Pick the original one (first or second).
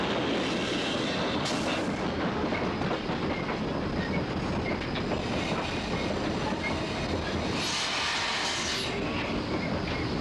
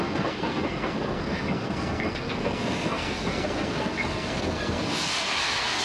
first